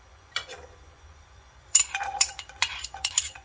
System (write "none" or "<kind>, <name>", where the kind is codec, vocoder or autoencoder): vocoder, Vocos